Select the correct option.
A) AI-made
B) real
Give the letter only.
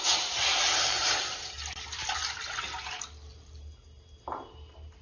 B